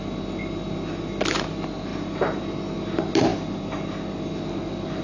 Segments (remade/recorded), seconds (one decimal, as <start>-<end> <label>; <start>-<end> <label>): 0.0-5.0 recorded